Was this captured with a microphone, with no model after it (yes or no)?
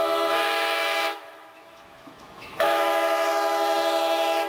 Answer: no